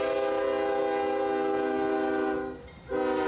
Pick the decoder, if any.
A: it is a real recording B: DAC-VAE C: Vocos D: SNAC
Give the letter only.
A